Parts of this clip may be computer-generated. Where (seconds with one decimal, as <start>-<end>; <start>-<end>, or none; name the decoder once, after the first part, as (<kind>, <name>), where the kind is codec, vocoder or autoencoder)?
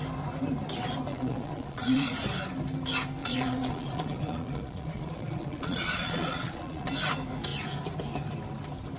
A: 1.1-2.1 (vocoder, Vocos); 3.2-6.9